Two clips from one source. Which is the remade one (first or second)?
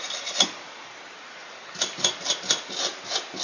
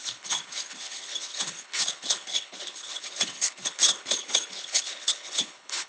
second